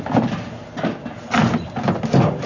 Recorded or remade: recorded